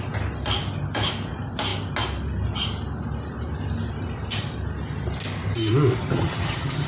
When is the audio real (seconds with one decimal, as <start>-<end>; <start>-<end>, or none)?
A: 0.0-6.0